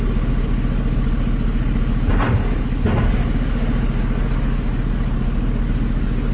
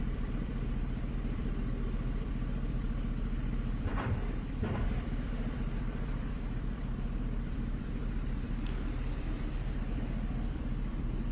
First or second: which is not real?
second